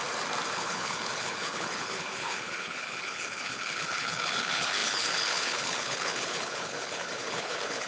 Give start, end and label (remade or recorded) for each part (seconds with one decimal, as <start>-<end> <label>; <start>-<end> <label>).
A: 0.0-0.5 recorded; 0.5-7.9 remade